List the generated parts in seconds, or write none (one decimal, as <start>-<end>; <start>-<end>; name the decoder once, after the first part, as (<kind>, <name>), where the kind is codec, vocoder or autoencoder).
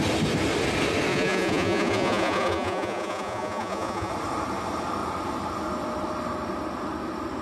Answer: 1.1-4.1 (vocoder, Vocos)